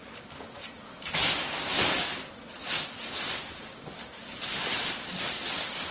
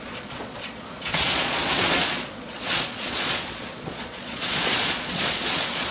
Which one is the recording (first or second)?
first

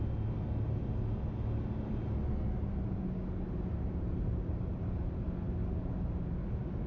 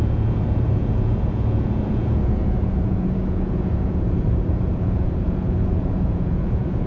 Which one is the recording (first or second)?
first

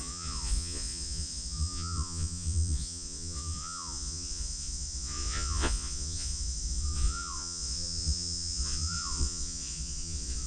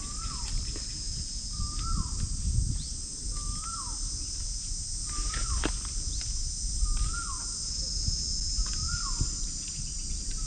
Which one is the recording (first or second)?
second